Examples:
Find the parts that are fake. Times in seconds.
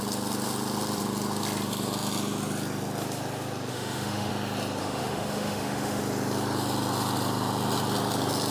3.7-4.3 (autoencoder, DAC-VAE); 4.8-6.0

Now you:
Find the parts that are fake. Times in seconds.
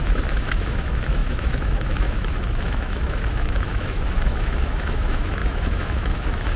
0.0-6.6 (autoencoder, DAC-VAE)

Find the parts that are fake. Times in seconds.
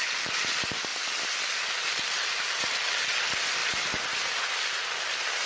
none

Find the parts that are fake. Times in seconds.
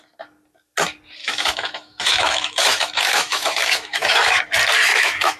1.2-4.4 (autoencoder, DAC-VAE); 4.9-5.4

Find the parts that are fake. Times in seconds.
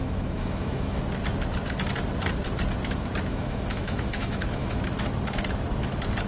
0.0-1.0 (autoencoder, DAC-VAE); 3.3-4.8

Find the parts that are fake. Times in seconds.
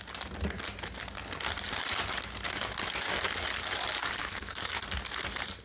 4.2-4.8 (autoencoder, DAC-VAE)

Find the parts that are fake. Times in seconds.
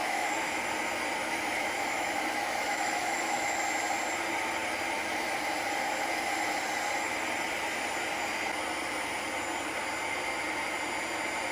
0.0-0.6 (autoencoder, DAC-VAE); 1.2-3.6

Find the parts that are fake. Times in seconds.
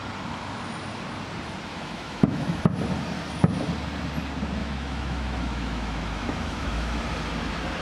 1.7-2.6 (autoencoder, DAC-VAE); 4.6-7.0